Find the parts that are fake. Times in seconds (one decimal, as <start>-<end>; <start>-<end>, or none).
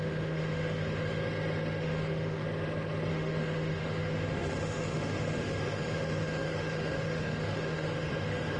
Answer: 0.0-1.2; 1.8-2.4; 3.1-8.6